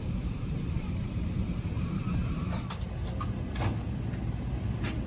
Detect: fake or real real